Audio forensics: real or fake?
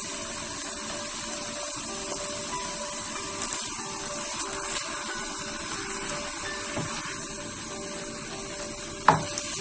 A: real